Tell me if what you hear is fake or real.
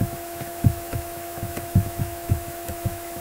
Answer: fake